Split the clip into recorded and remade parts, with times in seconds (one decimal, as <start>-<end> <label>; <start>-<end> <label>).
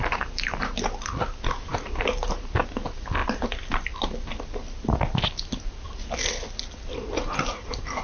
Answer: 0.0-8.0 recorded